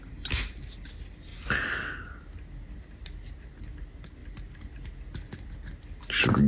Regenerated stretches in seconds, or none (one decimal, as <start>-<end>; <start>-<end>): none